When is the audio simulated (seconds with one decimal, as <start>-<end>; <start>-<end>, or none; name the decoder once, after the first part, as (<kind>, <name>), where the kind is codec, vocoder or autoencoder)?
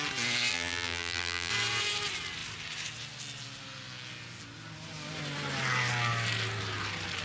0.5-1.5 (vocoder, BigVGAN v2)